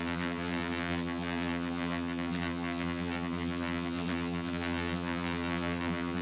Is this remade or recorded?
remade